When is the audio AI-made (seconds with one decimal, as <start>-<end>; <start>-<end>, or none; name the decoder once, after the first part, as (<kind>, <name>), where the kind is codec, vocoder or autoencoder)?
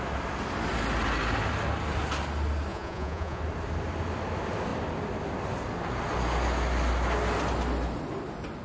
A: 2.7-3.4 (vocoder, Vocos)